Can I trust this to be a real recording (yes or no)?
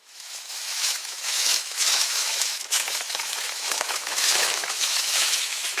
no